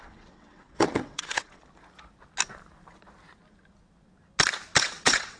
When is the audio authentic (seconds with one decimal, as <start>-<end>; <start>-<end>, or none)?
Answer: 1.6-4.8